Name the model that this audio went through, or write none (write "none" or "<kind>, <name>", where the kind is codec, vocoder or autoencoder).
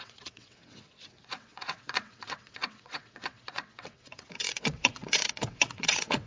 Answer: vocoder, WaveNeXt